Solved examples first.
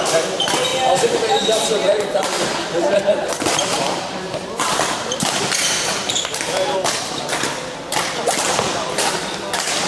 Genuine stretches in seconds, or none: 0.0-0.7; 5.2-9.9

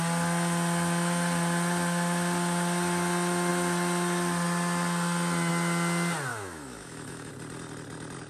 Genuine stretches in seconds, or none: 0.0-6.3; 7.3-8.3

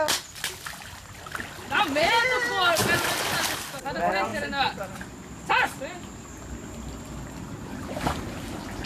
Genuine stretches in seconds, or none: 0.0-8.9

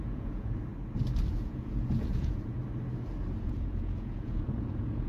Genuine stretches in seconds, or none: 0.7-1.3; 2.6-3.4

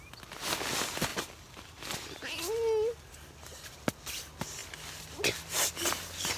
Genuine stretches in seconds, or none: 0.0-1.1; 1.9-6.4

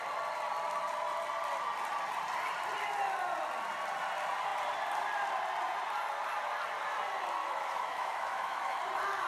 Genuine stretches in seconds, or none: 0.0-7.4; 8.8-9.3

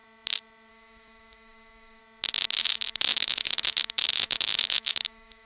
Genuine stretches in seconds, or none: 0.0-0.7; 2.0-2.6

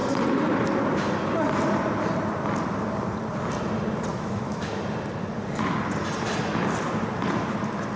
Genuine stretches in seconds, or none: 0.0-4.1; 4.8-8.0